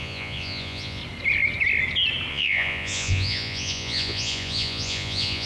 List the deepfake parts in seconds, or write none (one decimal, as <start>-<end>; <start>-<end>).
0.0-1.0; 2.3-5.5